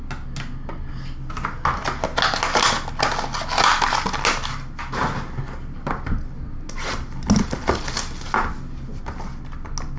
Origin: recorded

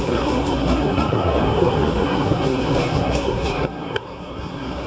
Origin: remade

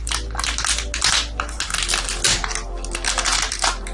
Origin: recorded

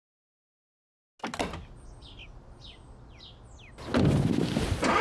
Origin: recorded